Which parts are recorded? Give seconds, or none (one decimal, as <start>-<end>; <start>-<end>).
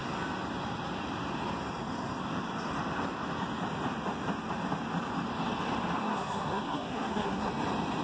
0.0-6.0; 7.5-8.0